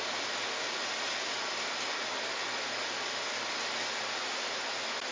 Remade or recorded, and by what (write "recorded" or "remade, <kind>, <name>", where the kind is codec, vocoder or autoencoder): recorded